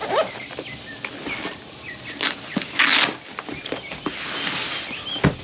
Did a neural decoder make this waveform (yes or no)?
no